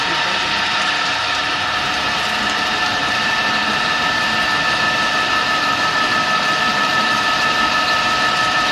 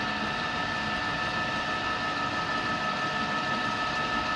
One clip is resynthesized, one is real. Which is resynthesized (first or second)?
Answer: first